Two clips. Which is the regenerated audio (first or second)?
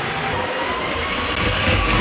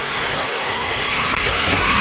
second